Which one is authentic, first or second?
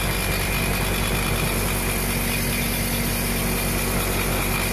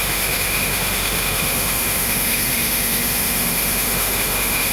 first